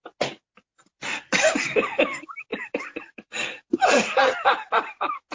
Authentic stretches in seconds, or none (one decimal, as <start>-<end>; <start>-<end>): 0.0-0.9; 1.5-2.5; 4.5-5.3